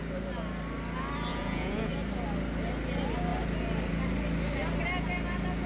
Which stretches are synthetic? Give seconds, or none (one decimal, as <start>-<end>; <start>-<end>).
1.3-1.9